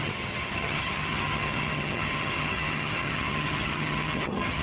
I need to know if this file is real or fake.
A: fake